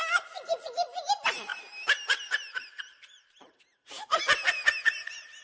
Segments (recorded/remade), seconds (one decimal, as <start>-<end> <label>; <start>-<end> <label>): 0.0-1.1 recorded; 1.1-1.5 remade; 1.5-2.6 recorded; 2.6-5.4 remade